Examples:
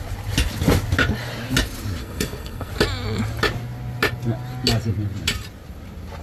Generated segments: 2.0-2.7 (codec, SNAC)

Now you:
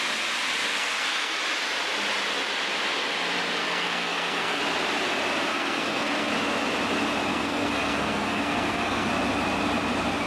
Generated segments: 0.7-1.4 (codec, SNAC); 3.6-4.6; 5.5-6.3; 7.3-9.1